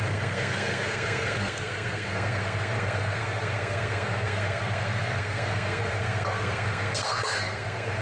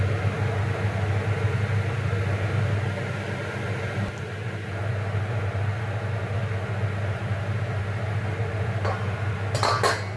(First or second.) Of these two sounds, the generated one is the first